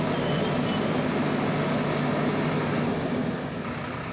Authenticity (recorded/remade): recorded